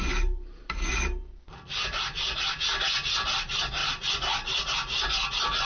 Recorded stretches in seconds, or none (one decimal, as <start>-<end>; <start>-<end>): 0.0-5.7

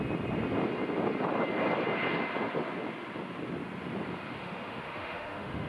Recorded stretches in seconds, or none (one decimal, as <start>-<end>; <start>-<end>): 0.0-4.4

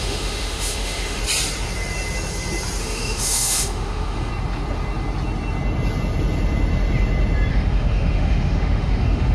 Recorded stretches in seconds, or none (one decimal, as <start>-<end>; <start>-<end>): 1.2-2.8; 4.3-7.5

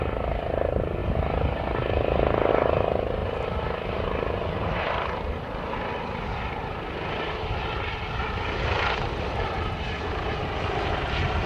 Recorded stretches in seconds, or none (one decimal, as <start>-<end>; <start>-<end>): 0.0-11.5

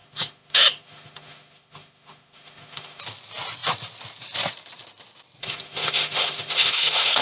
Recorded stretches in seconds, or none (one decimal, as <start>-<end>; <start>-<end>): 3.0-5.4